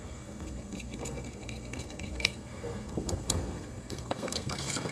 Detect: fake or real fake